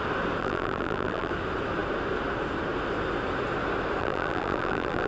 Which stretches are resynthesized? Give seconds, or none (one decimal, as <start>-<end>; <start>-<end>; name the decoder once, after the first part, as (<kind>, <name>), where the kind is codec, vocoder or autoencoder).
0.4-1.3 (vocoder, BigVGAN v2); 4.0-5.1